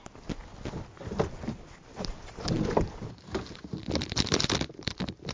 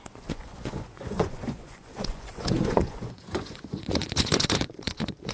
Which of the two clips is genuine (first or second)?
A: first